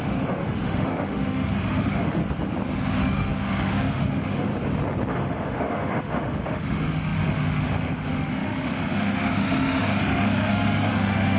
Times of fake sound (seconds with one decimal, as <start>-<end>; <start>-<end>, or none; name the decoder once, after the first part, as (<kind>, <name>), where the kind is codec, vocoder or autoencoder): 0.0-2.2 (autoencoder, DAC-VAE); 3.0-4.5; 5.1-11.4

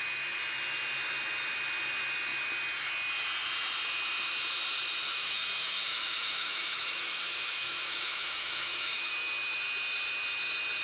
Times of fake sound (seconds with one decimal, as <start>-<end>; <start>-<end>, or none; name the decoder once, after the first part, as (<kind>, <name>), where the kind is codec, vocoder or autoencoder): 5.1-9.1 (autoencoder, DAC-VAE)